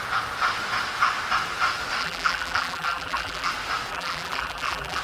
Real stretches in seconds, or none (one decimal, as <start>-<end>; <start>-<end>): 0.0-2.0; 3.5-3.9